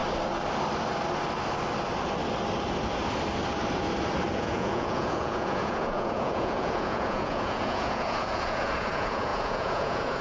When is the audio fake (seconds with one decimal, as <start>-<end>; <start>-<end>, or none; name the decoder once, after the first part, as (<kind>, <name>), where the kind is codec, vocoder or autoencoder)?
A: 4.3-10.2 (vocoder, Vocos)